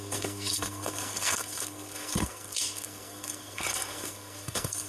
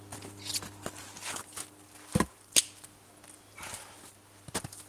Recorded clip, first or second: second